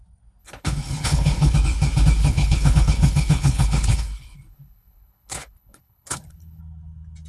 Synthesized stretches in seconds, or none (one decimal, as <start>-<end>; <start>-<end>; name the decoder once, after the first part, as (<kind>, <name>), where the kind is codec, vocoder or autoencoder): 0.4-1.5 (codec, HILCodec); 2.2-6.6